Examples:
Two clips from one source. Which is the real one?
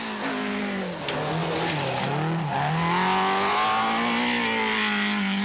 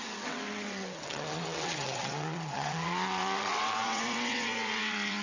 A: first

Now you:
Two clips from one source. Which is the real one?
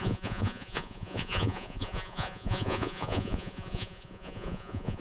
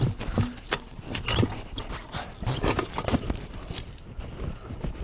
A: second